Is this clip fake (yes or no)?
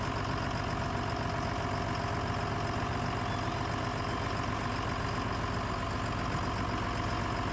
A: no